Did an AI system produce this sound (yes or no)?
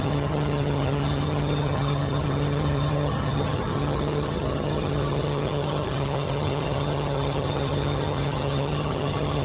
yes